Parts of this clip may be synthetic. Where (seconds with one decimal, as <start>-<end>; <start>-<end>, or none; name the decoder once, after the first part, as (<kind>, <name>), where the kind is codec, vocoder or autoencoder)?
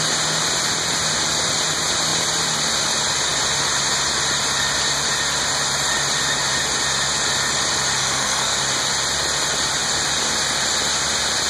8.0-8.6 (codec, SNAC)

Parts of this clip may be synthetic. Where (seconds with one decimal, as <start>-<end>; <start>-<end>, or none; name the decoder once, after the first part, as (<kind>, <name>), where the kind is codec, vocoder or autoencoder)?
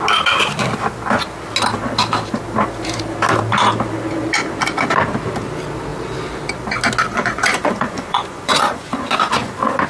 7.1-9.5 (vocoder, Vocos)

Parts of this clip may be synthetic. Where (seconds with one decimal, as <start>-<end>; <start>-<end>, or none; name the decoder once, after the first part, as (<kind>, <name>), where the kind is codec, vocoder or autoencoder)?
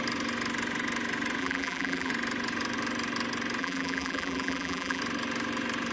1.4-2.1 (vocoder, BigVGAN v2); 3.6-5.0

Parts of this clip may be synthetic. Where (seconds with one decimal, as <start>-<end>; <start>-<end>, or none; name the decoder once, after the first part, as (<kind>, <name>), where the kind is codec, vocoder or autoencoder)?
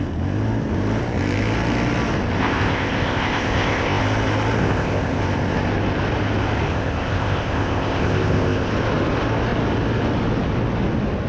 2.4-4.0 (codec, ZipCodec); 4.6-5.2; 6.7-8.7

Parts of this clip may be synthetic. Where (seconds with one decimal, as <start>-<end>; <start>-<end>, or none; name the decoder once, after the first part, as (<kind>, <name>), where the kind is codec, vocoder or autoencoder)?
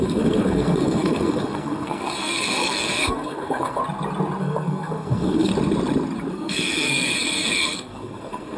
0.0-3.8 (codec, SNAC); 4.4-5.5; 6.3-8.6